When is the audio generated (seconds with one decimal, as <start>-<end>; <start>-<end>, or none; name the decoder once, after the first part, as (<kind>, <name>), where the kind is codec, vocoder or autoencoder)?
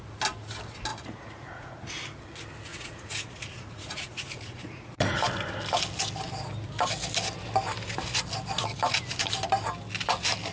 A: 0.9-1.8 (vocoder, Vocos); 2.7-5.2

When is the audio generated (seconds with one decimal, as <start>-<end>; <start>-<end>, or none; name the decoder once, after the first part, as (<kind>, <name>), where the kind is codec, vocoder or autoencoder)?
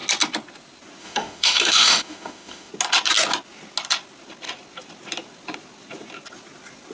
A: 1.0-2.7 (autoencoder, DAC-VAE)